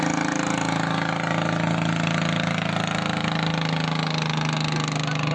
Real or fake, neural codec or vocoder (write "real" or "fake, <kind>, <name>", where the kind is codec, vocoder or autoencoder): real